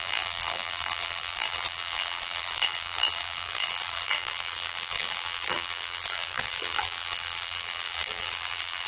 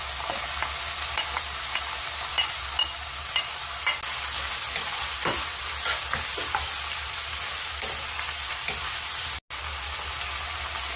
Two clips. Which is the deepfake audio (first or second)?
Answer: first